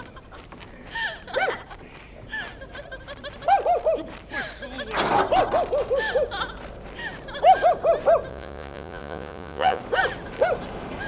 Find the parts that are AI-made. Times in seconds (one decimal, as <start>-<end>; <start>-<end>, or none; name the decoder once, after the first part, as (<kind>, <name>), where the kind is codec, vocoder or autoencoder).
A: 8.3-9.8 (vocoder, Vocos)